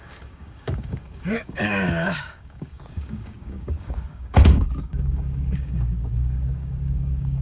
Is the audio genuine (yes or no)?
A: no